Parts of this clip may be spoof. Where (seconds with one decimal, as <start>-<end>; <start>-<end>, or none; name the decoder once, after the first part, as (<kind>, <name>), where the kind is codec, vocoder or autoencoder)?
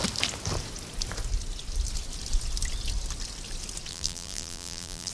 3.9-5.1 (vocoder, BigVGAN v2)